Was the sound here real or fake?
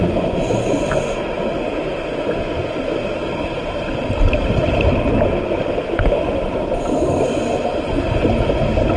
real